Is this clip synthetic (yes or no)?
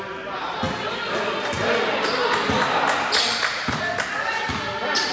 no